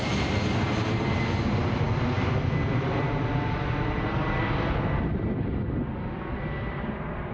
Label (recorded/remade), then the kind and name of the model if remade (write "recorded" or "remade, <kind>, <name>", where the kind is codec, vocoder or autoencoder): recorded